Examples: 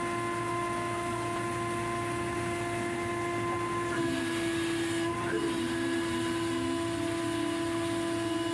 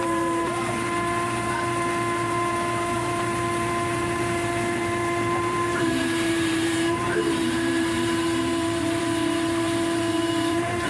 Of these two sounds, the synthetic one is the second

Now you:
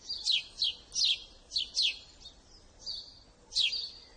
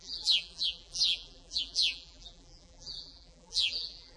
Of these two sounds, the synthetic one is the second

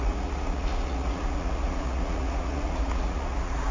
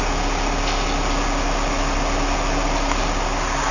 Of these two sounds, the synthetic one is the first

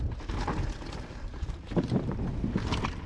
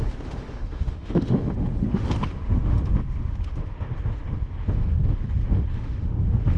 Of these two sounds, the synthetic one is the second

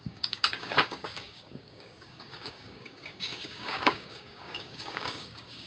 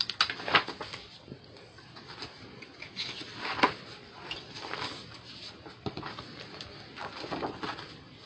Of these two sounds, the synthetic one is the first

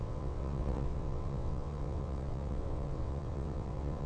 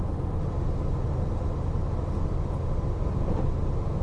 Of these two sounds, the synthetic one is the first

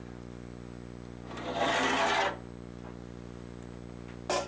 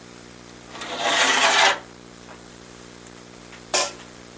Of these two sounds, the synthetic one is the second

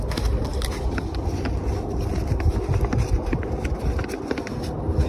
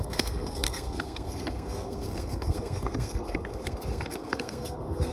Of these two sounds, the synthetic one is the second